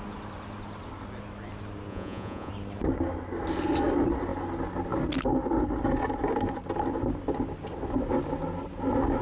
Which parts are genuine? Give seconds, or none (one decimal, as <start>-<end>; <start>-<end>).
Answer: 0.0-1.9; 2.5-9.2